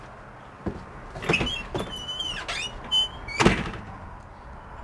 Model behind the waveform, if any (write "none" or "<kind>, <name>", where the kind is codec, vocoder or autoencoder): none